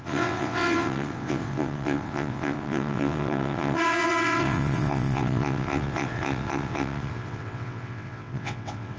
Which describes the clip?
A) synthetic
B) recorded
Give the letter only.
A